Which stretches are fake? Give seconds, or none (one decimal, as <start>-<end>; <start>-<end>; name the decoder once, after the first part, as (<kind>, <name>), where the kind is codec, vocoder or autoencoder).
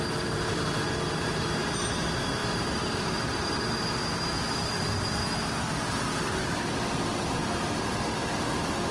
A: none